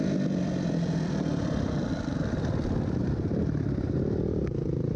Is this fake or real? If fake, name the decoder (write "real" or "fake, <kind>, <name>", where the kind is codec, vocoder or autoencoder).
fake, vocoder, BigVGAN v2